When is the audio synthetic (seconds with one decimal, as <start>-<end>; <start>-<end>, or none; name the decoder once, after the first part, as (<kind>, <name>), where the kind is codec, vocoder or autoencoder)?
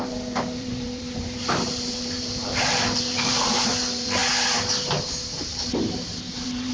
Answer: 0.0-4.2 (vocoder, BigVGAN v2); 5.4-6.7